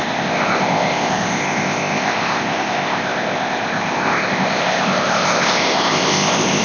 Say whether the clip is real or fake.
fake